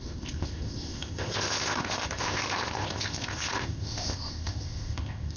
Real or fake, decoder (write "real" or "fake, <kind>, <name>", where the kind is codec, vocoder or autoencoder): fake, codec, ZipCodec